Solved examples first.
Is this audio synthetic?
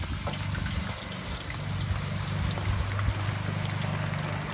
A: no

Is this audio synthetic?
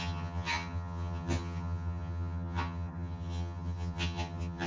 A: yes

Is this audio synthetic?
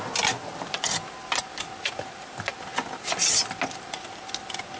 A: no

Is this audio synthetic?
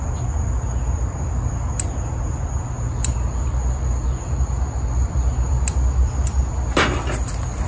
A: no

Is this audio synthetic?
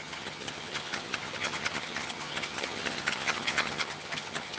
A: yes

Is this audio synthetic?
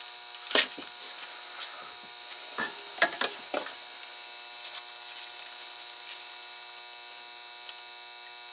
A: no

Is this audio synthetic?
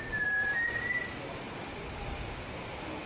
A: no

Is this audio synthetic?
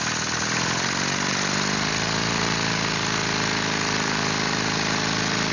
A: no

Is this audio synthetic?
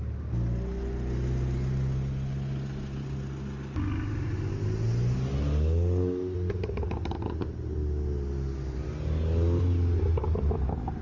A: no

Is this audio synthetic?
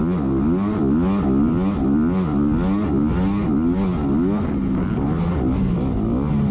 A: no